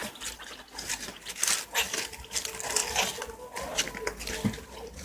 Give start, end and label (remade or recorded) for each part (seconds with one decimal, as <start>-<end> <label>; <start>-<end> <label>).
0.0-5.0 recorded